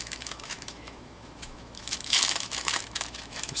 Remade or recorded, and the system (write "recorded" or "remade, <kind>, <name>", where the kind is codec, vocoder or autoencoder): remade, autoencoder, DAC-VAE